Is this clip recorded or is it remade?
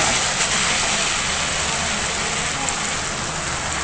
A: recorded